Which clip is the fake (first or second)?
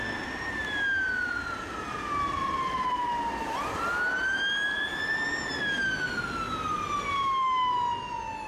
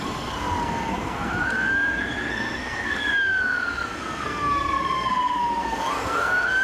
second